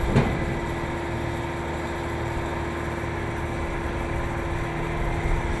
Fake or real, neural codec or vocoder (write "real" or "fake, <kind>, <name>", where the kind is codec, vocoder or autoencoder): real